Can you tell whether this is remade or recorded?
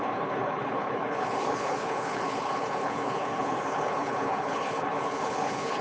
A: remade